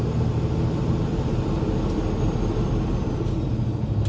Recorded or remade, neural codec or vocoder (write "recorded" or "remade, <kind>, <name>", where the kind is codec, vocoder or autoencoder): remade, vocoder, BigVGAN v2